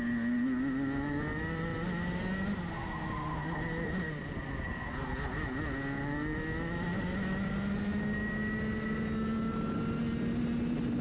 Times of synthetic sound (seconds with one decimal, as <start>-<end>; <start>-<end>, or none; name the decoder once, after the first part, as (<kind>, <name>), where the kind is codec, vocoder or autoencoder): none